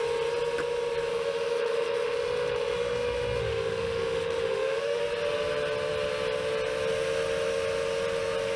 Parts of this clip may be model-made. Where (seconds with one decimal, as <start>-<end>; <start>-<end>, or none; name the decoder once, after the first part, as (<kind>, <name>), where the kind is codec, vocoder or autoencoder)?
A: 1.1-5.0 (autoencoder, DAC-VAE)